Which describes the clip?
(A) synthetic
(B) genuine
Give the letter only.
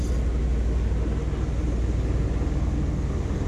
B